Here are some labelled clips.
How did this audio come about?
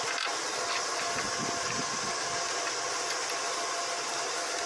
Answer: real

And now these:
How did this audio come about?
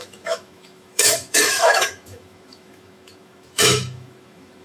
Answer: fake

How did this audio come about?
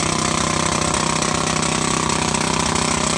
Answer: real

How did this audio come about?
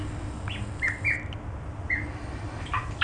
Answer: real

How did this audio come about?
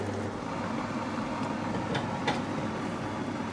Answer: real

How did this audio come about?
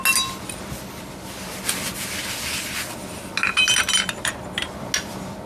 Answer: real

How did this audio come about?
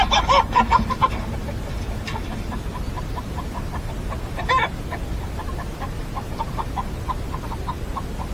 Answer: real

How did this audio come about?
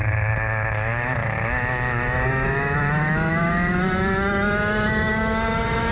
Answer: fake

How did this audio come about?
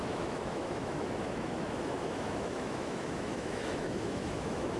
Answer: fake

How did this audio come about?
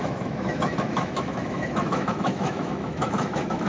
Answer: fake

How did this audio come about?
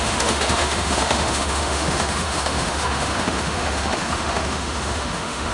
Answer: fake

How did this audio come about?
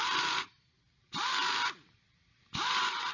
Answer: real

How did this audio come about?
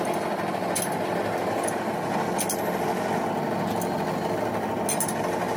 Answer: real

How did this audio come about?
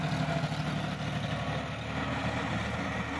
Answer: real